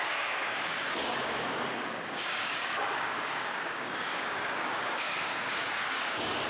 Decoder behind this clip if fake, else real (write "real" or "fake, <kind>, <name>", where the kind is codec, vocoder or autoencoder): fake, codec, DAC